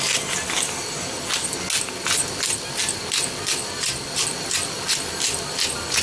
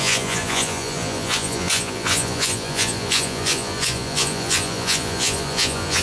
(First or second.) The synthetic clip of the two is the second